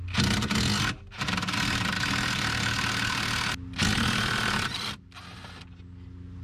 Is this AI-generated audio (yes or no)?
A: no